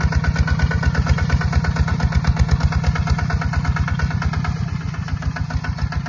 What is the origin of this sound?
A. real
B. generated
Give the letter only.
A